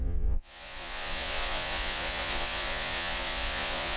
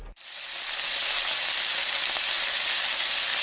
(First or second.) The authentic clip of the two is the second